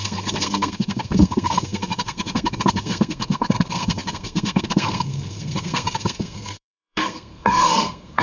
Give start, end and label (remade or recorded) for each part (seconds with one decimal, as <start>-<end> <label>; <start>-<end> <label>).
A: 0.0-8.2 remade